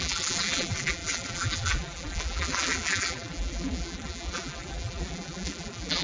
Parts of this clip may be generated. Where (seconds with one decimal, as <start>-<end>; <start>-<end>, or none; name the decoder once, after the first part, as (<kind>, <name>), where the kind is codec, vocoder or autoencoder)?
0.0-6.0 (vocoder, BigVGAN v2)